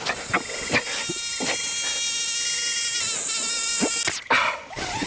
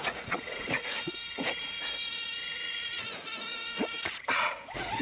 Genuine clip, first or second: first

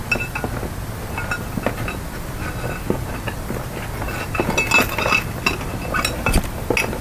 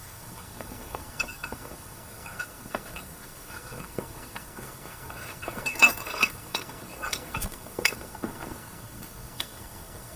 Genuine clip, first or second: first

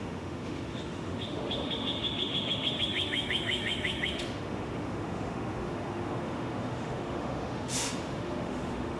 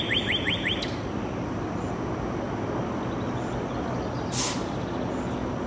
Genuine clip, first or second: second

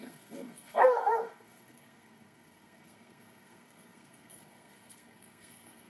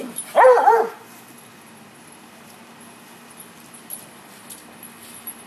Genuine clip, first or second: second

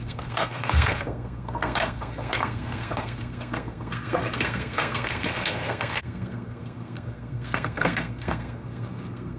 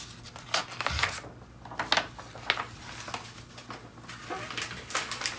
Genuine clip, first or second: second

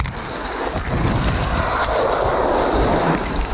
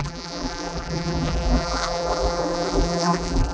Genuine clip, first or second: first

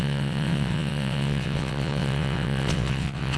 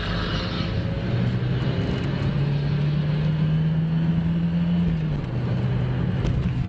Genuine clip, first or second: second